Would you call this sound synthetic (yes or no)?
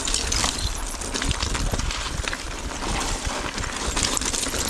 no